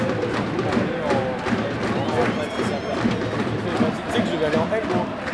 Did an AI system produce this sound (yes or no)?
no